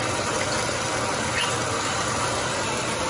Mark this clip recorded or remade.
recorded